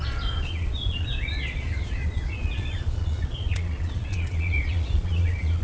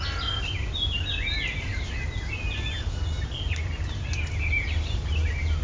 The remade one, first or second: first